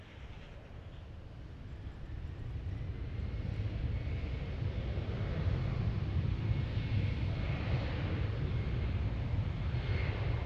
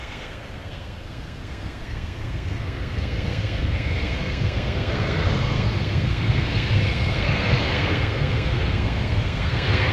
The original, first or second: first